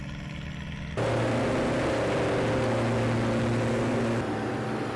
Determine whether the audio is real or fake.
real